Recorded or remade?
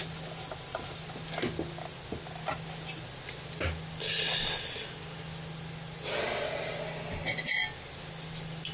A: recorded